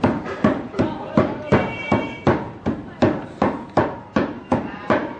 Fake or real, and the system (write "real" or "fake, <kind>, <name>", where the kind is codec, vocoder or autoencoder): fake, vocoder, BigVGAN v2